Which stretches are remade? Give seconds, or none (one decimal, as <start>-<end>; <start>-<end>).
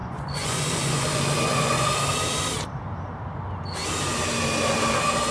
0.0-1.9